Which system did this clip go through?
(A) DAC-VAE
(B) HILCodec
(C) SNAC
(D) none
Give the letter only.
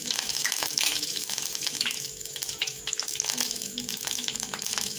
A